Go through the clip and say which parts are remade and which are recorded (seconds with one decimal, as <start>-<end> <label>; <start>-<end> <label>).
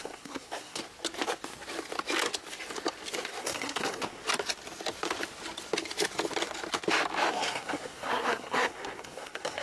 0.0-0.8 remade; 0.8-3.4 recorded; 3.4-4.2 remade; 4.2-7.3 recorded; 7.3-9.6 remade